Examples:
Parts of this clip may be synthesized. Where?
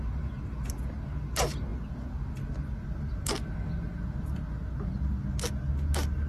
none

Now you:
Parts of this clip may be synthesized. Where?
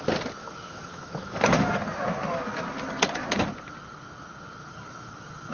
0.4-1.7 (autoencoder, DAC-VAE)